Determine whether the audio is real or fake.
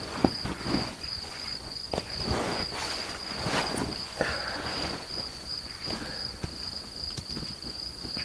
fake